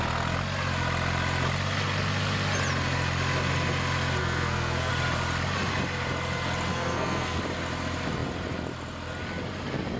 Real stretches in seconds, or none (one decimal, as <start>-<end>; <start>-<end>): 0.0-4.2; 4.9-6.7; 7.4-10.0